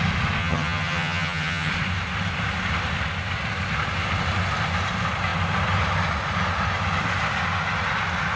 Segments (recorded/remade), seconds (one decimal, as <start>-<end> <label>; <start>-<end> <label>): 0.0-0.4 recorded; 0.4-1.7 remade; 1.7-8.4 recorded